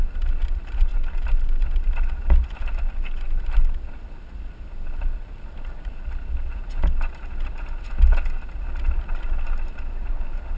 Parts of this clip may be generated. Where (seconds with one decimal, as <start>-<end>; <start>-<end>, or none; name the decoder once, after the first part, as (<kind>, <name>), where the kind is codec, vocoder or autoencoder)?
none